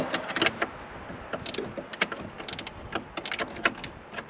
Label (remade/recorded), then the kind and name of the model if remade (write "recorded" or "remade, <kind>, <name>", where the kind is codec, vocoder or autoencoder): recorded